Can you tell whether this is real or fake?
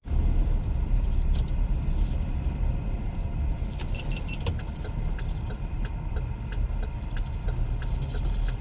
real